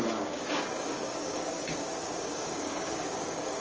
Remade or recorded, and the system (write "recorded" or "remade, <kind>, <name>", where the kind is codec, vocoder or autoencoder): remade, codec, DAC